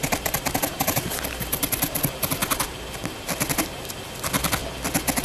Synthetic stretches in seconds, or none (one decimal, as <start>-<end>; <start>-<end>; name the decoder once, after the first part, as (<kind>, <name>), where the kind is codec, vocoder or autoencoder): 0.0-2.4 (vocoder, BigVGAN v2); 3.1-4.6